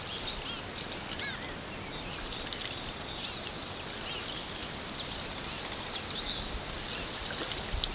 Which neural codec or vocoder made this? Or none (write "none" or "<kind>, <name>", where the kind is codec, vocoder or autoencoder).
none